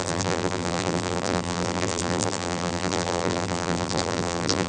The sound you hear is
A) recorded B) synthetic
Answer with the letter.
B